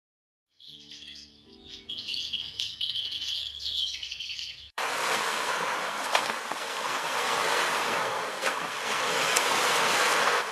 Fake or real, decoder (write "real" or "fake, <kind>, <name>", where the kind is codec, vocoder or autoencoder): fake, codec, SNAC